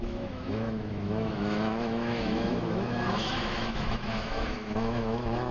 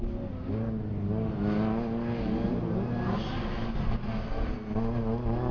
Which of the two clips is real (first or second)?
second